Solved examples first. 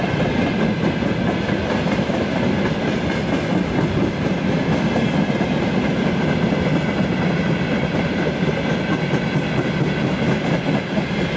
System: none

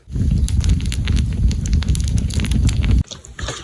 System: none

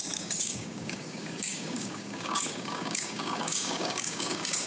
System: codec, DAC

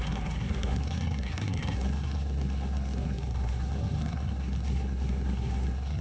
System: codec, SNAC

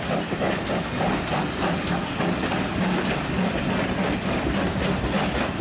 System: none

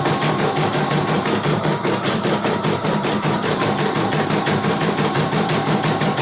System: vocoder, BigVGAN v2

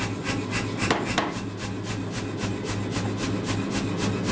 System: none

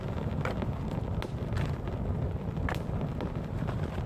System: none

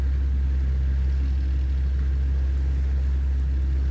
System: none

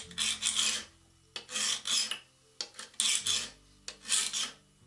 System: none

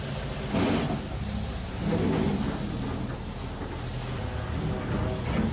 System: none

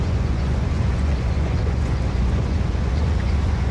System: vocoder, Vocos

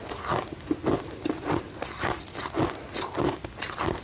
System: none